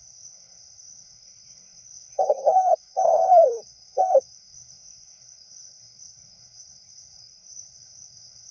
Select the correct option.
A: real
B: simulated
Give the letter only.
B